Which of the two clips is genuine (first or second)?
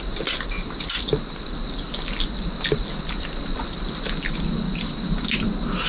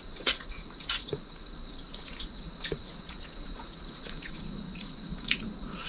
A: first